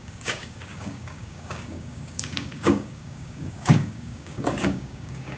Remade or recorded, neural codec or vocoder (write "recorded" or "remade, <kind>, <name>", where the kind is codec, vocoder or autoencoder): remade, codec, DAC